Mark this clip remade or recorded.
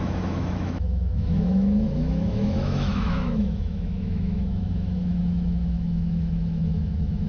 remade